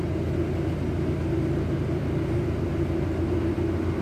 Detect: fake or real real